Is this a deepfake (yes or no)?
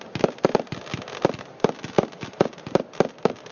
no